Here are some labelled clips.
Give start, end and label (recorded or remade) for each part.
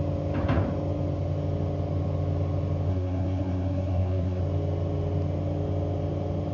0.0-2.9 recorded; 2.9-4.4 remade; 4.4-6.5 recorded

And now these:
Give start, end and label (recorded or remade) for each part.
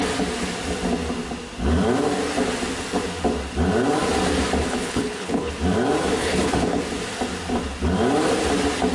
0.0-4.6 recorded; 4.6-5.5 remade; 5.5-6.2 recorded; 6.2-6.8 remade; 6.8-8.9 recorded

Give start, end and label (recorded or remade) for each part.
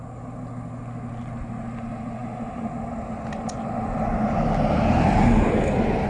0.0-6.1 recorded